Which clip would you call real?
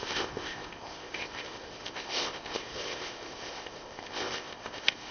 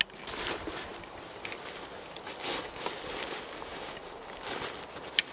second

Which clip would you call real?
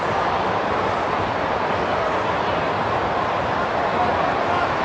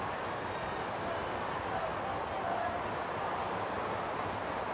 second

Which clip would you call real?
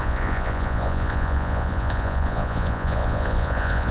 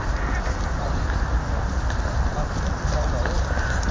second